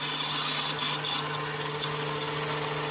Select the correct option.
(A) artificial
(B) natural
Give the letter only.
B